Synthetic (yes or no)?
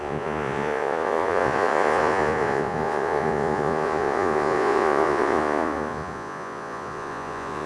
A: yes